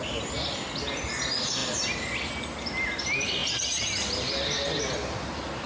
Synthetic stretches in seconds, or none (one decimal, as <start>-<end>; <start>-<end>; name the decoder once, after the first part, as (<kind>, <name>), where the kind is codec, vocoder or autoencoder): none